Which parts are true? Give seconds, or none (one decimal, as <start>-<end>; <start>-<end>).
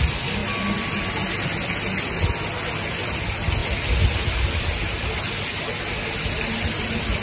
0.0-7.2